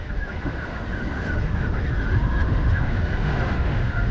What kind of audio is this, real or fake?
fake